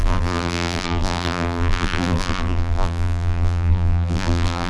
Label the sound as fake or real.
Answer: fake